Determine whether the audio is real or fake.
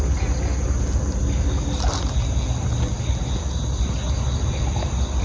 real